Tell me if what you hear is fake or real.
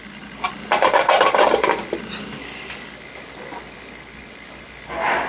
real